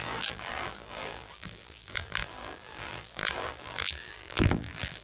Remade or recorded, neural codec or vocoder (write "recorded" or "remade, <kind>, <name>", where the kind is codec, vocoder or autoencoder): remade, vocoder, BigVGAN v2